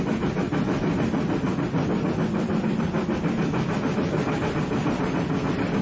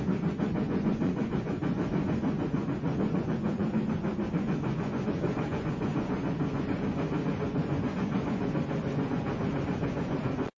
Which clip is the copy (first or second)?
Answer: second